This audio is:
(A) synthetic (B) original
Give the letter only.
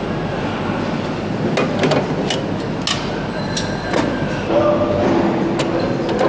B